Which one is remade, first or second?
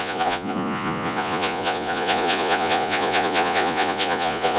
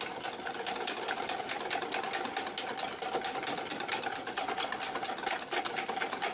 first